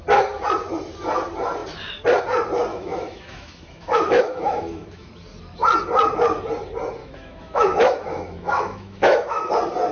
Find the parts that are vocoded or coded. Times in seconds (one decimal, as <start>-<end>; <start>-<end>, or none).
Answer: 2.7-5.1; 7.0-9.5